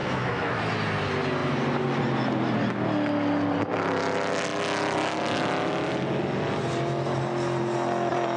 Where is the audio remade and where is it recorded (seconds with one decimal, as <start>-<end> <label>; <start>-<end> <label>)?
0.0-0.6 remade; 0.6-8.4 recorded